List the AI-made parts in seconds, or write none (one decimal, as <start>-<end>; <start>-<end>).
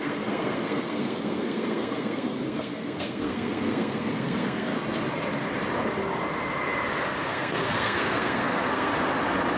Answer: 0.0-4.7; 7.3-8.9